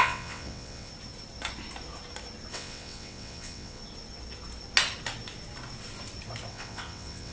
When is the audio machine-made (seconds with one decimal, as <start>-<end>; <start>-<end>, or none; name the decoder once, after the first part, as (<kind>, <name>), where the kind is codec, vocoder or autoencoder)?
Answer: 0.0-0.9 (vocoder, WaveNeXt); 2.5-3.8; 6.5-7.3